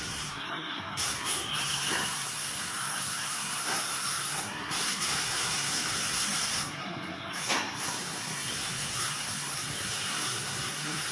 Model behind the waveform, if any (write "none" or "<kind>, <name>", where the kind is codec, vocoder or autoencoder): codec, SNAC